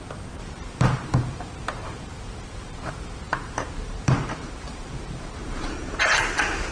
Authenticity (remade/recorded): remade